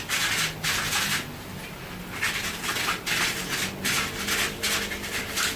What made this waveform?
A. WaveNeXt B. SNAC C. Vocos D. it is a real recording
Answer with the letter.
D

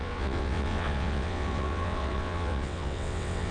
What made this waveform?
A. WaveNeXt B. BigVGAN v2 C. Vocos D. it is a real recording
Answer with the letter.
A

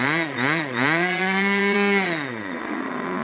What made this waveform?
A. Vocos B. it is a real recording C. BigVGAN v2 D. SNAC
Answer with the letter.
A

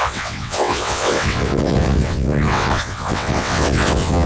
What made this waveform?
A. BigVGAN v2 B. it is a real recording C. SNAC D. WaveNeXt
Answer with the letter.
D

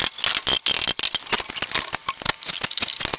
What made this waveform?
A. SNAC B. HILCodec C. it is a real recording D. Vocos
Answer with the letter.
C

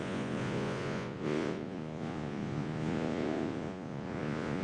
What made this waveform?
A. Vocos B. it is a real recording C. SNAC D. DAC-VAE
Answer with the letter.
A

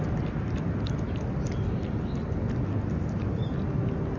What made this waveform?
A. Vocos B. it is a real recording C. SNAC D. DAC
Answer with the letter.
B